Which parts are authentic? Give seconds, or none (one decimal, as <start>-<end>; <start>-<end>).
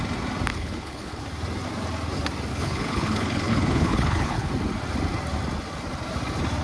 0.0-0.5; 1.2-2.5; 4.5-6.6